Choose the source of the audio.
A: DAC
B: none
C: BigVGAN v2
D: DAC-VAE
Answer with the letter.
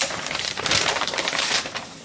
C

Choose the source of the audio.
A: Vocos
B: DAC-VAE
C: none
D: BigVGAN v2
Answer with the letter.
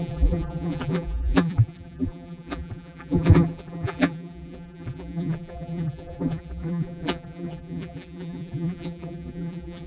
D